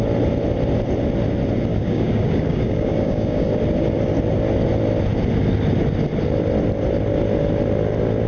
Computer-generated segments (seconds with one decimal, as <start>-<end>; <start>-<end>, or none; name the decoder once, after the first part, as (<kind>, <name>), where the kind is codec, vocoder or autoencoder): 1.7-3.5 (codec, DAC)